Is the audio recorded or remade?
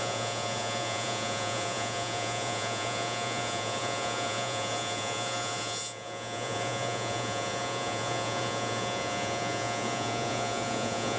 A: remade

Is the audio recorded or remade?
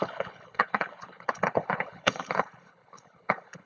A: remade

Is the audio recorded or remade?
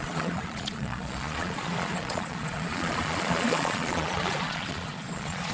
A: remade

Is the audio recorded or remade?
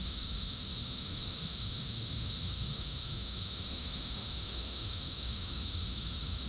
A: remade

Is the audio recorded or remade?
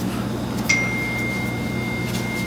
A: recorded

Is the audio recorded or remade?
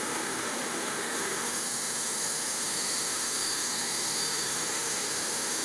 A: remade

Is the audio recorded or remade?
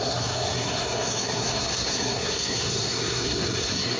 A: remade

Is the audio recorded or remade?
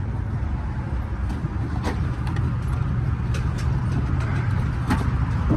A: recorded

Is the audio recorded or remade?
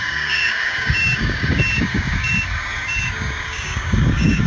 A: remade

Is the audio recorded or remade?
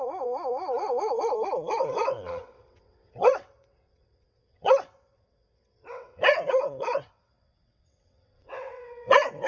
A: remade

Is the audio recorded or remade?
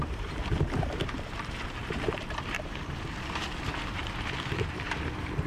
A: remade